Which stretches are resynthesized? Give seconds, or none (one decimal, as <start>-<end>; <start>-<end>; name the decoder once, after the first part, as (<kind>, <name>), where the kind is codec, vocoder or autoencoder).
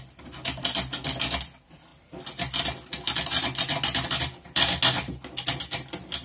none